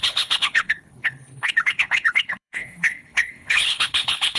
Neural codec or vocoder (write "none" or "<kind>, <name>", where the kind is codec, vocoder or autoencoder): codec, HILCodec